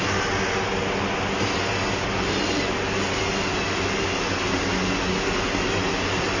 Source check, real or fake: real